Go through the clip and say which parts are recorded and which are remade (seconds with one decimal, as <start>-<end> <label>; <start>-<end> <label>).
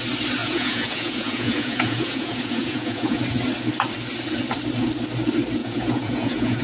0.0-0.4 recorded; 0.4-3.2 remade; 3.2-5.6 recorded; 5.6-6.6 remade